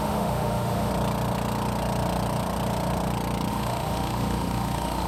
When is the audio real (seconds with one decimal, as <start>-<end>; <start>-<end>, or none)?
0.9-3.5